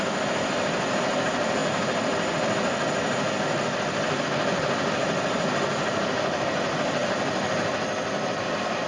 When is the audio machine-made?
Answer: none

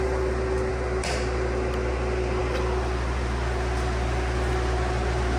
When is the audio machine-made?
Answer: none

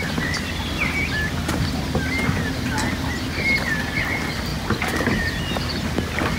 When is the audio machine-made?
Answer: none